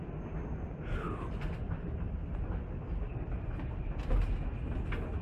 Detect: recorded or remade recorded